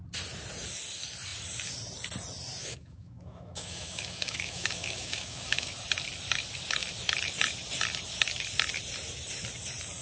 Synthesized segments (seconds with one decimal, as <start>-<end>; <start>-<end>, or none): 2.6-5.7